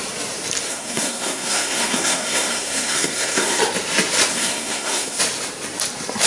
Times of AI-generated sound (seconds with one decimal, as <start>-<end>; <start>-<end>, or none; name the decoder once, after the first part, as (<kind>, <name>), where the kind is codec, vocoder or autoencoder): 0.7-3.6 (codec, SNAC); 4.3-5.2